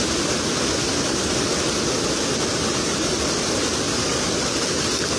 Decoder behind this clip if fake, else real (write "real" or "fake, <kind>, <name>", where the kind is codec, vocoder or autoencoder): real